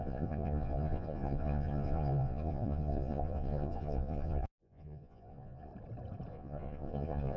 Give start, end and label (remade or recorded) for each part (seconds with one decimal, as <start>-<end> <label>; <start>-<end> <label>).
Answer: 0.0-5.7 remade; 5.7-6.3 recorded; 6.3-7.4 remade